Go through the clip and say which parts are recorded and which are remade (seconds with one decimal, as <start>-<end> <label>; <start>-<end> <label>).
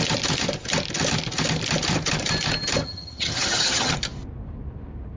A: 0.0-2.8 recorded; 2.8-3.9 remade; 3.9-5.2 recorded